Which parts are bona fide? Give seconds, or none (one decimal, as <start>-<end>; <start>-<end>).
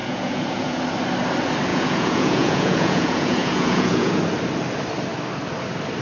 0.8-1.7; 4.2-6.0